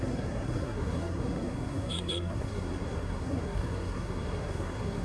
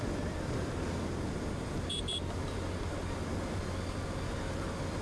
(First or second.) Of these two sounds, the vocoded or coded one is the first